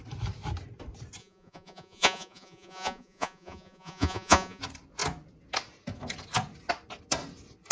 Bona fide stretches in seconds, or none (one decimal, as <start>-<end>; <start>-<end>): 0.0-1.2; 4.6-7.7